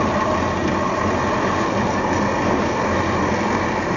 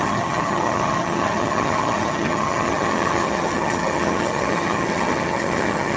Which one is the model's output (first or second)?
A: second